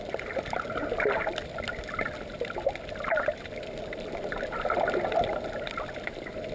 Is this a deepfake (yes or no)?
no